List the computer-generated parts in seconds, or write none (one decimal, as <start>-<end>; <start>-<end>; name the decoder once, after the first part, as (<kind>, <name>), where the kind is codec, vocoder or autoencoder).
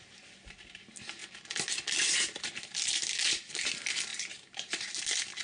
4.1-5.0 (vocoder, BigVGAN v2)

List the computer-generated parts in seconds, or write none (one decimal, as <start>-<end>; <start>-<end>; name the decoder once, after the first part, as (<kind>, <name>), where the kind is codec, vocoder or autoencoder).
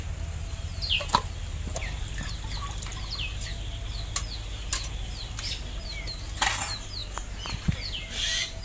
0.7-2.1 (vocoder, BigVGAN v2)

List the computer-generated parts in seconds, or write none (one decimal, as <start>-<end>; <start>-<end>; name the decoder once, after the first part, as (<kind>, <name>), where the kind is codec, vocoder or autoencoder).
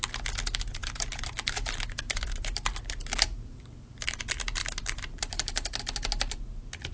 0.8-3.6 (vocoder, BigVGAN v2); 4.6-5.8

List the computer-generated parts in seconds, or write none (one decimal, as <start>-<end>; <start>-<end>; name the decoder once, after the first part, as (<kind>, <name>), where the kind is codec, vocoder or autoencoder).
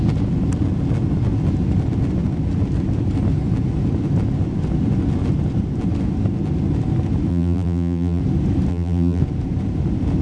7.3-8.2 (vocoder, BigVGAN v2); 8.7-9.2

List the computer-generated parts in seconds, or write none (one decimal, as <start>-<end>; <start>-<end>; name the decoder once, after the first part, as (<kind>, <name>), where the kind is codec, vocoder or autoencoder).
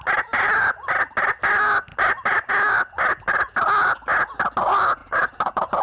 1.9-2.5 (vocoder, BigVGAN v2); 5.0-5.8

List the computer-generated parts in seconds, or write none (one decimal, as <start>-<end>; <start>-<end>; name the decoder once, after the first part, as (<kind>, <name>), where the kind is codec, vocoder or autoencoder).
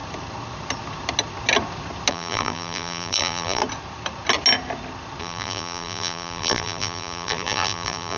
2.1-3.6 (vocoder, BigVGAN v2); 5.2-8.2